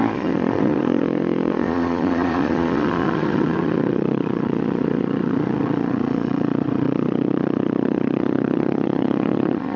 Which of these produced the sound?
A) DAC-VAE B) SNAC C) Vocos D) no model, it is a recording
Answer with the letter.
C